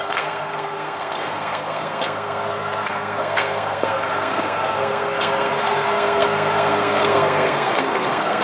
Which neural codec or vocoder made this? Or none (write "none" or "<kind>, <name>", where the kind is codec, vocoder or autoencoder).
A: codec, SNAC